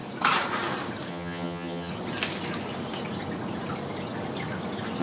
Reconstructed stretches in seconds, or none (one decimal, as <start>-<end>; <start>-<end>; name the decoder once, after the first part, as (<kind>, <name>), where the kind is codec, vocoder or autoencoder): 1.1-1.9 (vocoder, HiFi-GAN)